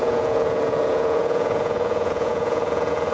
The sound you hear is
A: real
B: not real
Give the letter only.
B